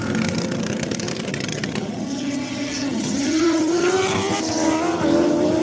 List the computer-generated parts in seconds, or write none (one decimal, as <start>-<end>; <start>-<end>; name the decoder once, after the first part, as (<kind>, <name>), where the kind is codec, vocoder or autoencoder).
1.3-3.9 (vocoder, HiFi-GAN)